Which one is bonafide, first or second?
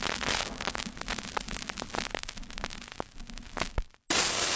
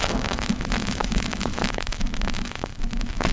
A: first